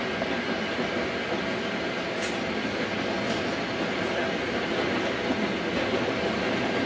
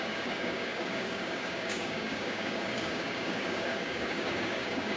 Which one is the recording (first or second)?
first